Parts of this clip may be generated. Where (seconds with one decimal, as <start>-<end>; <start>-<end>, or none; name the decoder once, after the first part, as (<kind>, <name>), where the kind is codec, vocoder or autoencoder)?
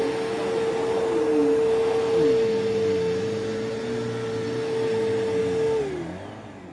none